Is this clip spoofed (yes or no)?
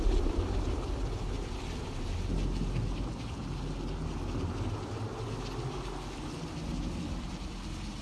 no